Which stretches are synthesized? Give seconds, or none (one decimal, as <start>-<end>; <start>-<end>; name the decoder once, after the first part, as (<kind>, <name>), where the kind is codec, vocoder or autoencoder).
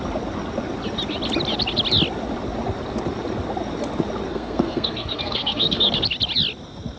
4.3-5.9 (codec, SNAC)